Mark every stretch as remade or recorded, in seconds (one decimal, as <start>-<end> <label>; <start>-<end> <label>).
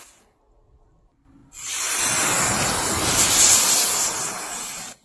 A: 0.0-5.0 recorded